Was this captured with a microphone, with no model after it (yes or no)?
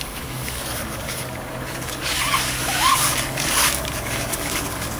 no